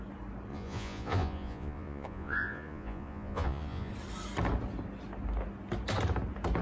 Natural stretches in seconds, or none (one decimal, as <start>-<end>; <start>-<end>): 0.0-0.5; 3.9-6.6